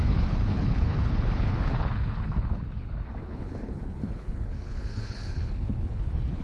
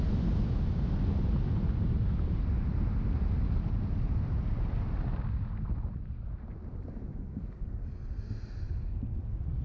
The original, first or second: second